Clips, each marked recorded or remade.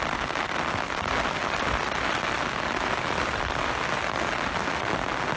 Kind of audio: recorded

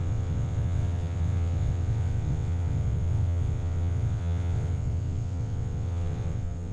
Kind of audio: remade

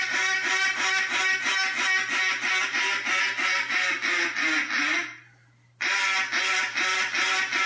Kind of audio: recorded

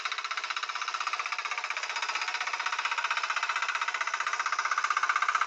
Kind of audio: recorded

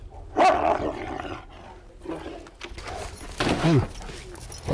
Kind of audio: recorded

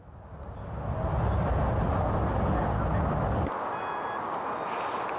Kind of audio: recorded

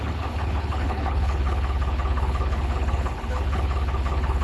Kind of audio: remade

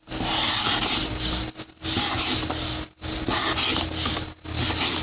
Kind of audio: recorded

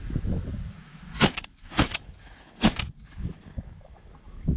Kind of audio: remade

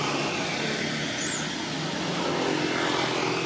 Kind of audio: recorded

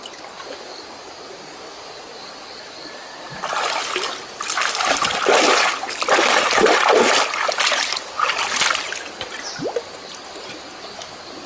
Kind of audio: recorded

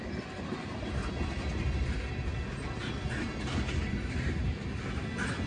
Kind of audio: recorded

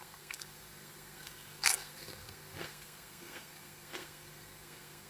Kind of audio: remade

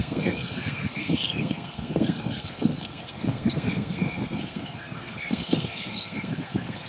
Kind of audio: remade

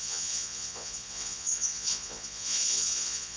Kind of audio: remade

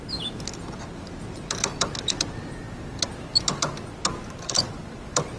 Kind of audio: recorded